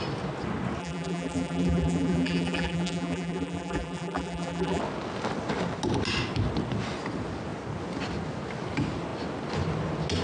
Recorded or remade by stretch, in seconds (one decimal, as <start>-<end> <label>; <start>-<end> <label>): 0.0-0.8 recorded; 0.8-4.8 remade; 4.8-10.2 recorded